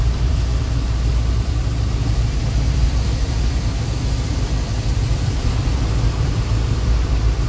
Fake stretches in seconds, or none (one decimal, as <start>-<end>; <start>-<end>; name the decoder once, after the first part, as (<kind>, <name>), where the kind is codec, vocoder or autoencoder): 0.0-1.7 (vocoder, BigVGAN v2); 2.4-7.5